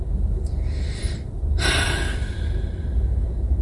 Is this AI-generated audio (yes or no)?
no